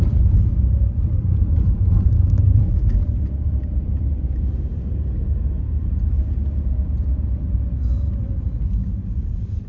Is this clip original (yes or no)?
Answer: no